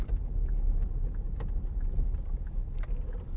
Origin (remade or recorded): recorded